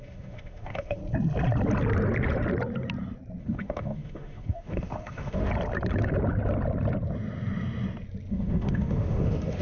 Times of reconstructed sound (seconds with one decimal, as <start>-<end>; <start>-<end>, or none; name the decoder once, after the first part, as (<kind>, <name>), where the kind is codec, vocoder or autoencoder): 0.0-1.0 (autoencoder, DAC-VAE); 3.4-5.5; 8.3-9.6